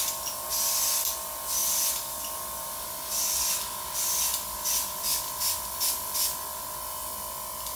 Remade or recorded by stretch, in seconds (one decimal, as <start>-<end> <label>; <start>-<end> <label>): 0.0-1.6 recorded; 1.6-3.4 remade; 3.4-4.3 recorded; 4.3-5.4 remade; 5.4-7.8 recorded